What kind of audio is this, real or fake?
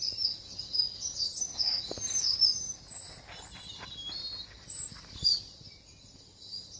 real